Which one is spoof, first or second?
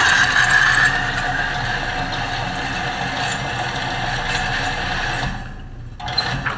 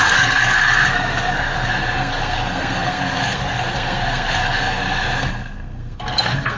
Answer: second